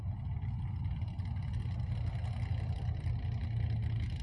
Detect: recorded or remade recorded